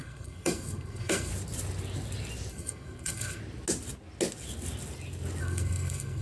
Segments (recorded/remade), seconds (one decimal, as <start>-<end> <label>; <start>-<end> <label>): 0.0-1.3 remade; 1.3-2.5 recorded; 2.5-3.4 remade; 3.4-5.4 recorded; 5.4-6.2 remade